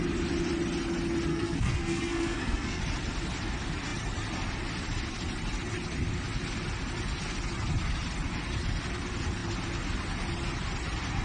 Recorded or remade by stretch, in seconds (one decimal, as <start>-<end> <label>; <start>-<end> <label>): 0.0-1.3 recorded; 1.3-2.8 remade; 2.8-11.2 recorded